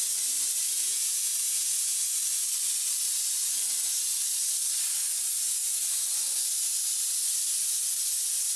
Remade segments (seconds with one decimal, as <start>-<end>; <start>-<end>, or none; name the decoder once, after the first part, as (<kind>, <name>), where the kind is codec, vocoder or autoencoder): 0.8-2.0 (vocoder, Vocos)